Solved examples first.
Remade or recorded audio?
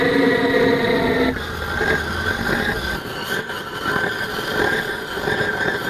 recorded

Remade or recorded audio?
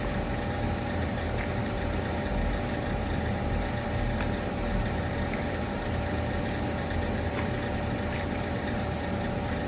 remade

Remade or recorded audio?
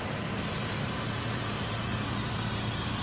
remade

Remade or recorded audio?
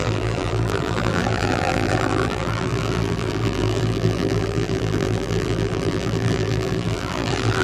remade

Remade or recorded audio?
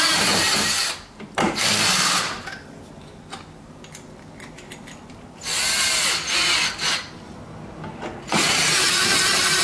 recorded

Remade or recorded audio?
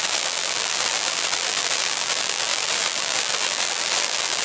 remade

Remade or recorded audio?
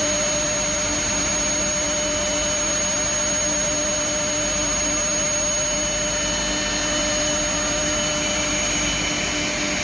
recorded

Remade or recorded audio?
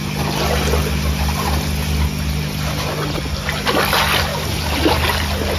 recorded